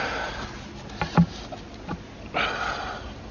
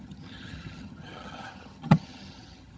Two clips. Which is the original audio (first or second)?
first